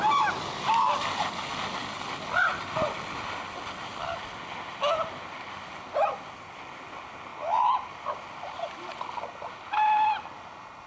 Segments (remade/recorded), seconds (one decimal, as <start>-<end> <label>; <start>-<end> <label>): 0.0-10.9 recorded